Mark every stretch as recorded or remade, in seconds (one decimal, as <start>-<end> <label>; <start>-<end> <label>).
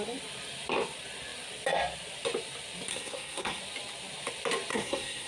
0.0-2.9 recorded; 2.9-3.6 remade; 3.6-4.7 recorded; 4.7-5.3 remade